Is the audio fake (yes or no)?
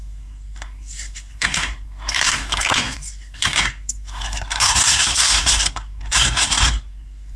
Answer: yes